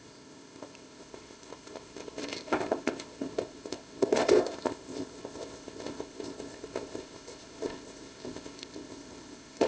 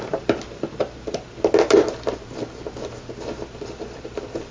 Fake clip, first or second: first